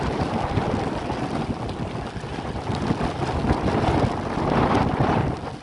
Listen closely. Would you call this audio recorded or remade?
recorded